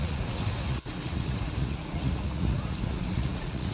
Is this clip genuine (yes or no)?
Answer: no